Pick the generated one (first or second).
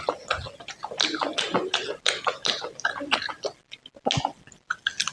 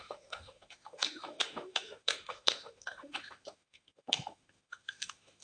second